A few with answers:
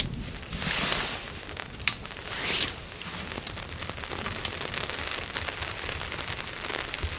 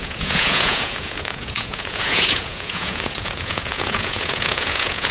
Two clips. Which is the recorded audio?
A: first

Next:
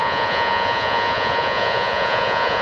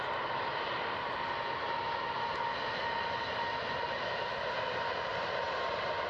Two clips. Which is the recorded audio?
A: second